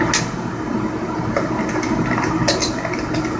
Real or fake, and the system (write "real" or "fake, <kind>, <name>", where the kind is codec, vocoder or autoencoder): real